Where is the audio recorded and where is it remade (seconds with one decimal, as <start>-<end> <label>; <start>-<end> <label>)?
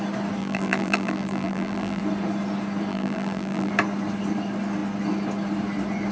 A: 0.0-0.4 recorded; 0.4-2.0 remade; 2.0-2.9 recorded; 2.9-3.7 remade; 3.7-6.1 recorded